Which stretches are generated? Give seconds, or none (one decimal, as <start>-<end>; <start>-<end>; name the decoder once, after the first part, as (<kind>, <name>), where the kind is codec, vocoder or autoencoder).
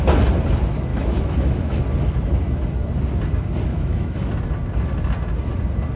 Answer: 0.9-1.8 (autoencoder, DAC-VAE); 3.7-4.3